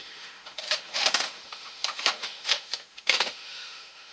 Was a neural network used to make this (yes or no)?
yes